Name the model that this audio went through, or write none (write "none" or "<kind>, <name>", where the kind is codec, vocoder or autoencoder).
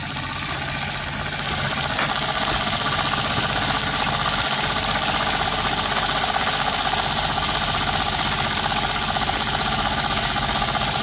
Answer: none